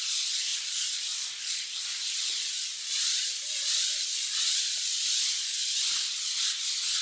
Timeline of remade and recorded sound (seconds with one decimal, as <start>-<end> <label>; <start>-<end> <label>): 0.0-7.0 recorded